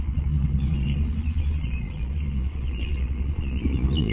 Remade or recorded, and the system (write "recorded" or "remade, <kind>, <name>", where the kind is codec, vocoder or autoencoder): remade, vocoder, Vocos